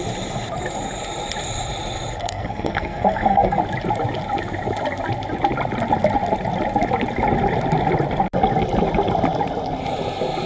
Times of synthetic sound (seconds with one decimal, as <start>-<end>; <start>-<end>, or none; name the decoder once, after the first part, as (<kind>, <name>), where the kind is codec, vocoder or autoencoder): 2.2-3.6 (codec, SNAC)